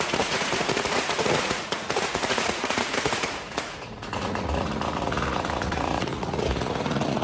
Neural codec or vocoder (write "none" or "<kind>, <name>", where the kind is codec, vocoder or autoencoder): vocoder, Vocos